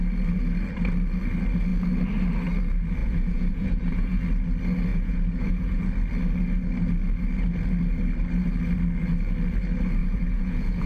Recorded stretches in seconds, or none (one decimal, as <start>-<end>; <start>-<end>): 0.0-3.0; 4.2-4.9; 5.8-10.0